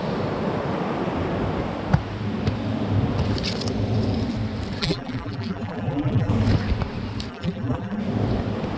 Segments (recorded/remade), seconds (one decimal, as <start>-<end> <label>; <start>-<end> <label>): 0.0-4.8 recorded; 4.8-6.3 remade; 6.3-7.3 recorded; 7.3-8.0 remade; 8.0-8.8 recorded